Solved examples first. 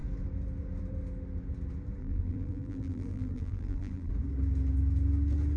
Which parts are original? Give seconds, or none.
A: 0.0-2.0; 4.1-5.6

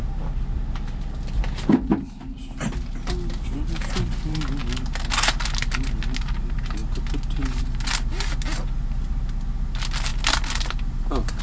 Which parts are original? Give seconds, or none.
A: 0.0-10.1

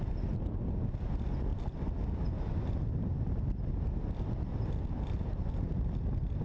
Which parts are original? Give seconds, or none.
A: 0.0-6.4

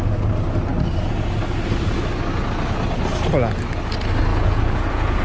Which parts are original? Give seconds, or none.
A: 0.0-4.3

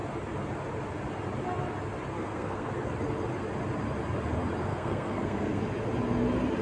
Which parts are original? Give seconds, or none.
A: 0.0-2.1; 2.7-4.7; 5.6-6.6

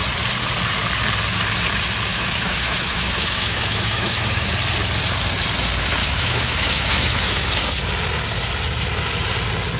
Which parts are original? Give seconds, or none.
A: 0.0-2.1; 4.5-6.0; 7.6-9.8

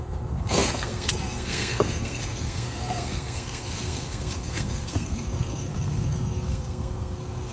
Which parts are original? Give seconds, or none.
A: none